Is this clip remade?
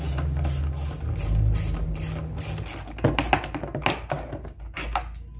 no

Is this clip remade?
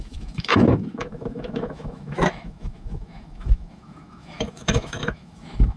yes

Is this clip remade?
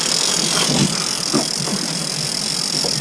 no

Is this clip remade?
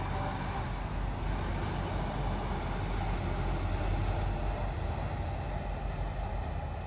no